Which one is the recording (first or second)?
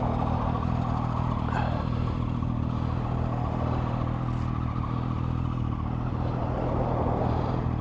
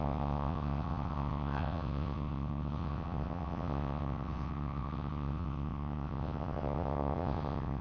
first